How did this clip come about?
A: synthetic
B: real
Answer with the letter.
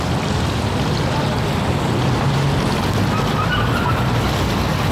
A